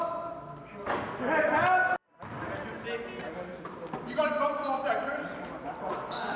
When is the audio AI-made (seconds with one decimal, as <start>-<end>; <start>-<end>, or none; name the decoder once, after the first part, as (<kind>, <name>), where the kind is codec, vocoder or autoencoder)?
none